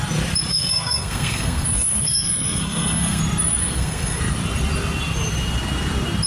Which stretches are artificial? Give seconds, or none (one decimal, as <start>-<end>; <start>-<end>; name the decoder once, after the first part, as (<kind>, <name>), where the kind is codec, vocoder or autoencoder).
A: 0.5-3.2 (codec, SNAC); 3.6-4.2